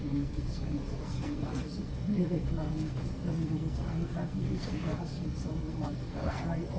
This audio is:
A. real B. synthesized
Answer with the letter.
B